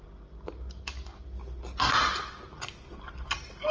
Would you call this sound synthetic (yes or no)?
no